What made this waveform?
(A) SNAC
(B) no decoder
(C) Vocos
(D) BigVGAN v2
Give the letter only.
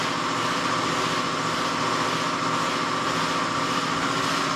B